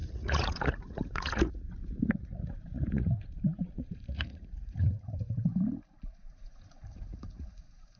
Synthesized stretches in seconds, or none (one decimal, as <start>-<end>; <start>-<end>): 0.0-5.5; 6.1-8.0